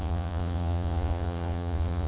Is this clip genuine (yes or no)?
no